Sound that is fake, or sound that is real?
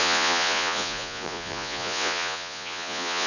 fake